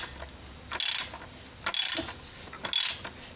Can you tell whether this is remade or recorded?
recorded